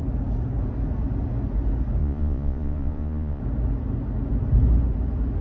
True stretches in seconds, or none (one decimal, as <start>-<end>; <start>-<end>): 0.0-2.0; 3.4-5.4